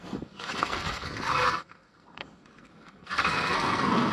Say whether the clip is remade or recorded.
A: remade